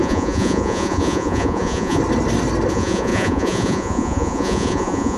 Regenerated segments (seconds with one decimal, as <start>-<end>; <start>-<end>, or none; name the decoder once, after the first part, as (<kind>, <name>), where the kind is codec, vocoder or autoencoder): 0.0-2.0 (vocoder, Vocos); 2.7-5.2

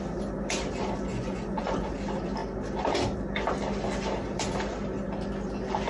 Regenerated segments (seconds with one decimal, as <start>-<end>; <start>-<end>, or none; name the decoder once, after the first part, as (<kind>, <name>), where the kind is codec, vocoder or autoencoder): 1.1-1.9 (vocoder, Vocos)